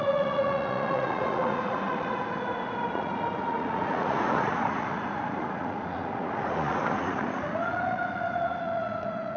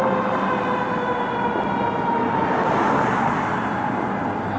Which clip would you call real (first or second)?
second